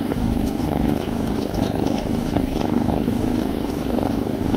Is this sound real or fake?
fake